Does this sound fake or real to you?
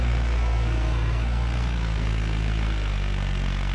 fake